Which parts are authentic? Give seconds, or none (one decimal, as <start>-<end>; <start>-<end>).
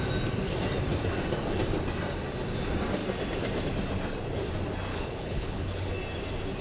0.0-4.9; 5.9-6.6